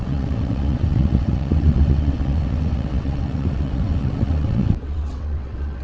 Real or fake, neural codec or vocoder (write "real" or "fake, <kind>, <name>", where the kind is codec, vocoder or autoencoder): fake, vocoder, WaveNeXt